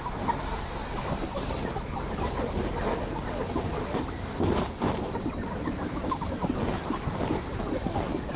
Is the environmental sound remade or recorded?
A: recorded